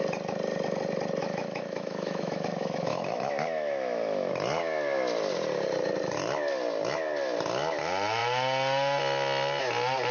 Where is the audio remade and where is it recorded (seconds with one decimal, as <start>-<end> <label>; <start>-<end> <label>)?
0.0-1.2 recorded; 1.2-4.3 remade; 4.3-10.1 recorded